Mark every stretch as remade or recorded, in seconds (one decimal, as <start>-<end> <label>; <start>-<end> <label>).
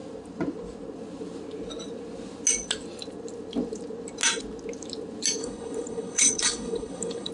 0.0-5.4 recorded; 5.4-7.3 remade